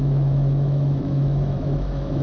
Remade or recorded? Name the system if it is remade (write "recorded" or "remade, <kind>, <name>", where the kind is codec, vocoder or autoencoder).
remade, autoencoder, DAC-VAE